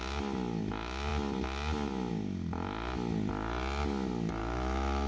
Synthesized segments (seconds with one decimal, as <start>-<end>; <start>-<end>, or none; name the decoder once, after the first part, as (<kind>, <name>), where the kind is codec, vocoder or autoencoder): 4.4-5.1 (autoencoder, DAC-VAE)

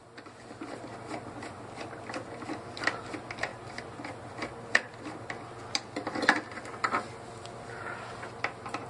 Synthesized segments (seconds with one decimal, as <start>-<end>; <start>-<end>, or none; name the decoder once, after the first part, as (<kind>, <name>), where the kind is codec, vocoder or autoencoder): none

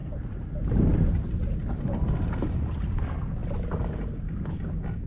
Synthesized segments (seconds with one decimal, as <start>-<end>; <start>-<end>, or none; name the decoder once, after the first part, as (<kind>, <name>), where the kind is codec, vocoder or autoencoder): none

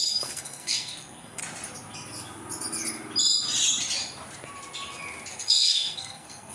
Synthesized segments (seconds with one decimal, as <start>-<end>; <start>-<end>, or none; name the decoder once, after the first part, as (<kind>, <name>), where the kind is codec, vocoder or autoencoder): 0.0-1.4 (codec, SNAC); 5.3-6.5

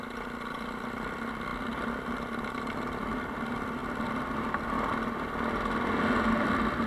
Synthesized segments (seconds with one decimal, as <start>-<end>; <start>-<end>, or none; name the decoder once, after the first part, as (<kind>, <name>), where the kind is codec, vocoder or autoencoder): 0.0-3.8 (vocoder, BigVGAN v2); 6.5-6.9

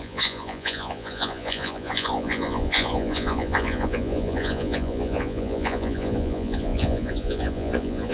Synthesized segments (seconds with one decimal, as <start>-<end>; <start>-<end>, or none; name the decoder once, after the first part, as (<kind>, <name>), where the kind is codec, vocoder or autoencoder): 0.0-8.1 (vocoder, Vocos)